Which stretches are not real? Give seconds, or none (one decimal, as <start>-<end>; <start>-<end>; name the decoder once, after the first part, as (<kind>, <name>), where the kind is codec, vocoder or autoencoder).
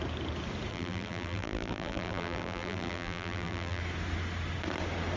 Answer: 0.7-3.8 (vocoder, BigVGAN v2)